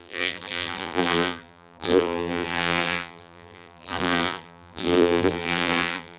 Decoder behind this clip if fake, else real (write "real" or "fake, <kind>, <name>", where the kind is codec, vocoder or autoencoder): fake, vocoder, BigVGAN v2